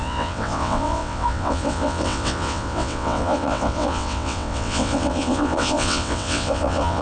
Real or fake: fake